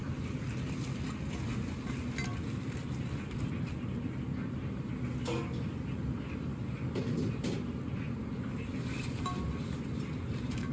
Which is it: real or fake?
real